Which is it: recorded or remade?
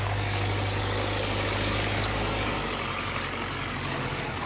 remade